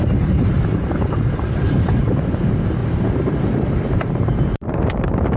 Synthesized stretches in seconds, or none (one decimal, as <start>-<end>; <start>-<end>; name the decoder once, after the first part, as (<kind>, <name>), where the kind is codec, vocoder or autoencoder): 2.8-4.9 (vocoder, BigVGAN v2)